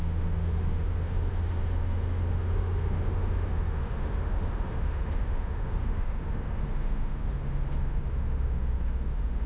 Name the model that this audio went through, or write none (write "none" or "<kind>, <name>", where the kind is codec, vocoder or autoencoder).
autoencoder, DAC-VAE